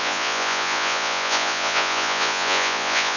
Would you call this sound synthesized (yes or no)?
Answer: yes